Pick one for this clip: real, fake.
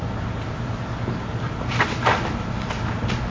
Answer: real